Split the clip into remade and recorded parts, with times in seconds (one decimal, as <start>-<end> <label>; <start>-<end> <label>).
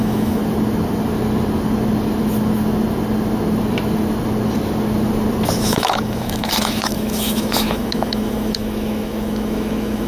0.0-0.4 remade; 0.4-5.6 recorded; 5.6-10.1 remade